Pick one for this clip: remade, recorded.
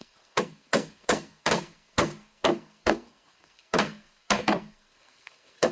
remade